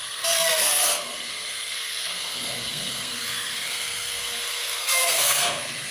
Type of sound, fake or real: fake